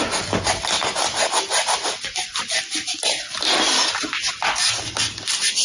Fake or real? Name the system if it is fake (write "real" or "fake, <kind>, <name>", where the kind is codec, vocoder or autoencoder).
real